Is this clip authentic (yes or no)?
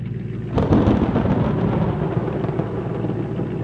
yes